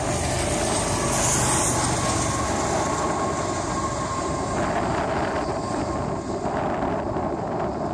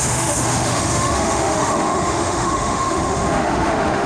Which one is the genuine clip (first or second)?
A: first